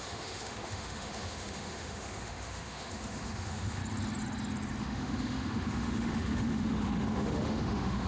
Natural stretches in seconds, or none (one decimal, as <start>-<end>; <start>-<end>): 3.8-4.8